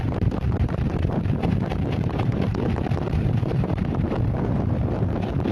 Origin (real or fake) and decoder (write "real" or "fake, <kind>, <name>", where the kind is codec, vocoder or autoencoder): fake, vocoder, BigVGAN v2